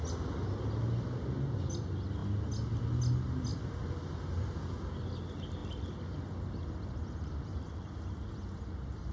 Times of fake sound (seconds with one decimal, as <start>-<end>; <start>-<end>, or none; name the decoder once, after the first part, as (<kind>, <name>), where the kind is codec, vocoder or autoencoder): 3.5-4.6 (vocoder, BigVGAN v2); 7.5-8.3